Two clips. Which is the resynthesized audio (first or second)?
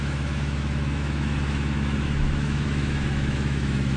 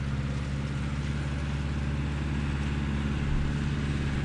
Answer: first